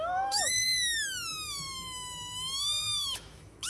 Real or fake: fake